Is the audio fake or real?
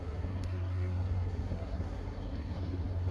fake